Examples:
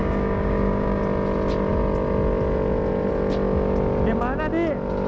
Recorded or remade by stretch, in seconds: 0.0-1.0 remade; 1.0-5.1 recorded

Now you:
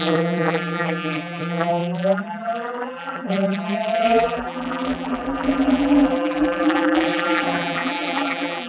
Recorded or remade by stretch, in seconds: 0.0-8.7 remade

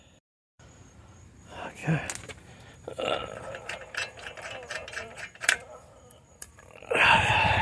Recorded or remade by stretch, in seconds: 0.0-1.8 remade; 1.8-2.4 recorded; 2.4-7.6 remade

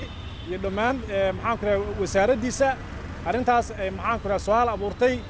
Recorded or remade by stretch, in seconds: 0.0-5.3 recorded